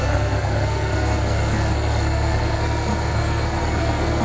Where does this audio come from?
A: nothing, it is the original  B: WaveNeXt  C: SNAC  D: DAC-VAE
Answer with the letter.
C